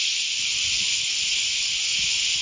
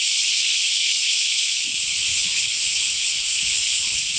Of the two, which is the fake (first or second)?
second